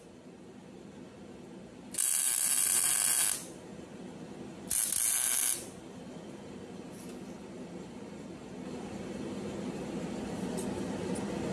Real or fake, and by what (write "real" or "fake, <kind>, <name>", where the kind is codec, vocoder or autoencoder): real